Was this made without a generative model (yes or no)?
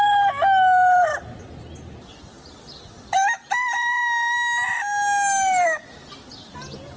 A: yes